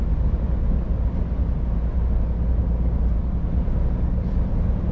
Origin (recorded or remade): recorded